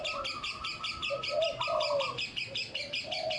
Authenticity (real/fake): real